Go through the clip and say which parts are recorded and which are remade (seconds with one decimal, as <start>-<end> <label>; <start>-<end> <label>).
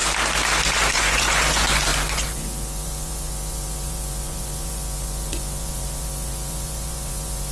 0.0-0.9 recorded; 0.9-7.5 remade